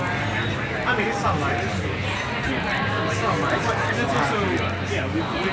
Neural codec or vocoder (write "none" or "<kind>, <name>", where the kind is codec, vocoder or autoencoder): none